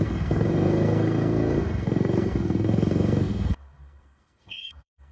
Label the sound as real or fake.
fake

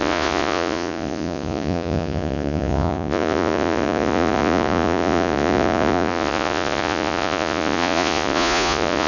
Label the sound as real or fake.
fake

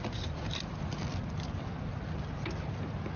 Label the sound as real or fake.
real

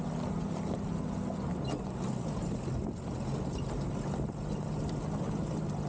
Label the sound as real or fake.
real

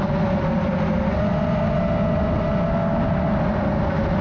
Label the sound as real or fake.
real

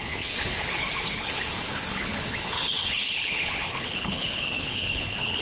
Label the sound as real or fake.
fake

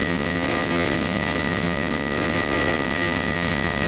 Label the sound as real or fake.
fake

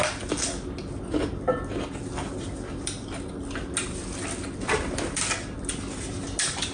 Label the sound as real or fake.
real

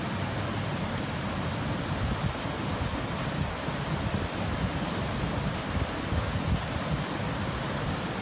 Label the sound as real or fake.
real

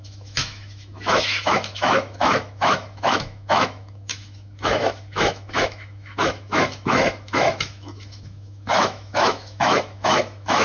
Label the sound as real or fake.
fake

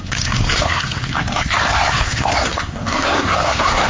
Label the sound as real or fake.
fake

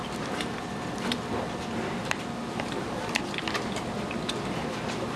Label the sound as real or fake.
real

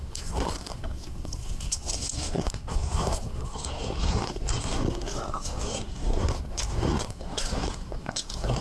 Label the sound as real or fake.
fake